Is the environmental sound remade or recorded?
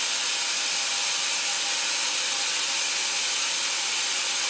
recorded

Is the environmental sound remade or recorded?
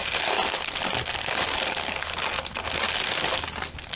recorded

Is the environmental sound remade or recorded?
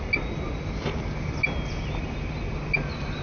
recorded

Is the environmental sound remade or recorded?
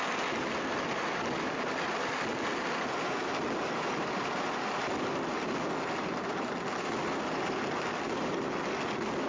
recorded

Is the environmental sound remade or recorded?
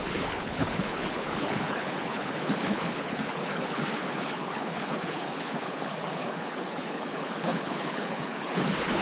remade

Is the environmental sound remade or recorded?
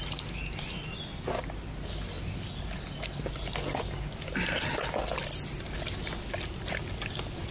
recorded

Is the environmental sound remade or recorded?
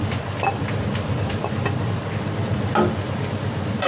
recorded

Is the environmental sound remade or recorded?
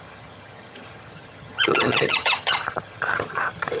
remade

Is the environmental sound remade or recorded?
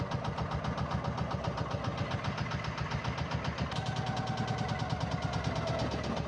recorded